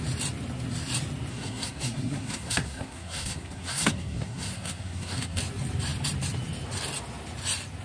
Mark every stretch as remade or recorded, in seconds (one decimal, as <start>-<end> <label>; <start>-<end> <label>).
0.0-1.3 recorded; 1.3-5.4 remade; 5.4-7.8 recorded